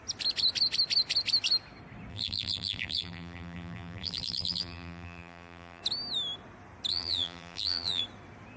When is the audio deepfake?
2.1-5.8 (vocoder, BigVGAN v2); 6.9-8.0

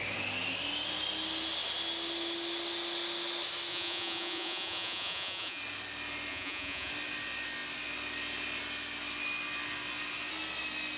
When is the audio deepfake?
3.7-5.6 (vocoder, Vocos); 6.3-6.9

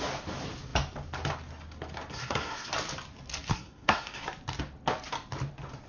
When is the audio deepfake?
2.1-2.7 (codec, SNAC); 3.5-4.2

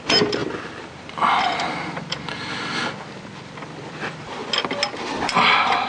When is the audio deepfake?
0.0-2.8 (vocoder, BigVGAN v2); 3.4-4.4; 5.0-5.9

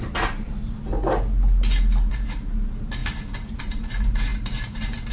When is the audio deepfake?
0.0-0.6 (vocoder, BigVGAN v2); 2.1-3.0; 3.6-5.1

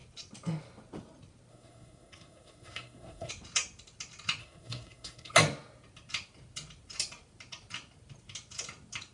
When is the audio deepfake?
1.5-3.3 (codec, SNAC); 4.4-5.3

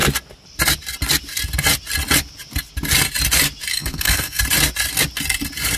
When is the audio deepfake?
3.7-4.4 (codec, SNAC)